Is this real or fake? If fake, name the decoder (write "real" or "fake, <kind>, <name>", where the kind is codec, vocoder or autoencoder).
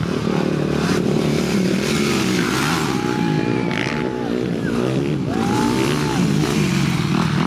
real